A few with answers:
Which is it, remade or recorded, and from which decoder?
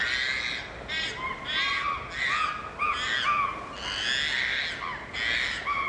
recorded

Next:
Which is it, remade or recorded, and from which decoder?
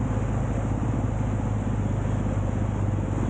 recorded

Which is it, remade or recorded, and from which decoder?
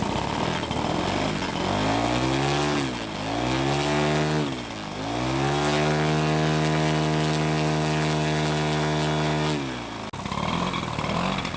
recorded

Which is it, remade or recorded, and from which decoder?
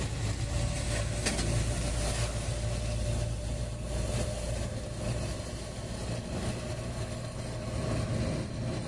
recorded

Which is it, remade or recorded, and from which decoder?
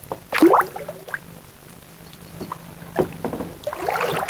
recorded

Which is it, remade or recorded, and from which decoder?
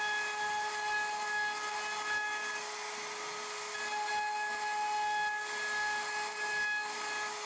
recorded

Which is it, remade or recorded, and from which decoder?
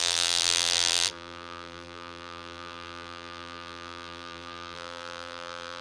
remade, vocoder, BigVGAN v2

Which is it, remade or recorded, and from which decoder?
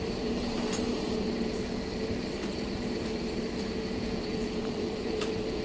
remade, vocoder, BigVGAN v2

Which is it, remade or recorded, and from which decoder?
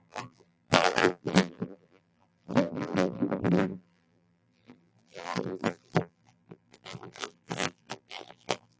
remade, vocoder, BigVGAN v2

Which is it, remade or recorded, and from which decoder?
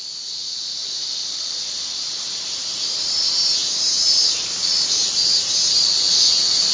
remade, vocoder, BigVGAN v2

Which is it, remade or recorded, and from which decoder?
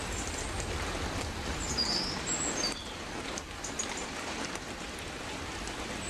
recorded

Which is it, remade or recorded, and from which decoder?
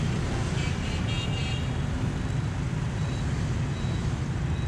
recorded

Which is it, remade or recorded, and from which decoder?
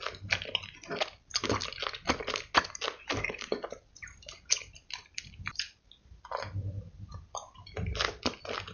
recorded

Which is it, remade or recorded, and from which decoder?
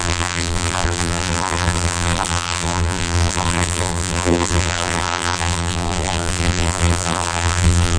remade, vocoder, BigVGAN v2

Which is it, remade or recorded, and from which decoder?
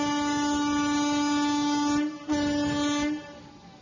recorded